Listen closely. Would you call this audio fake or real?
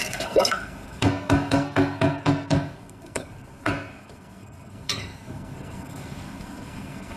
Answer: fake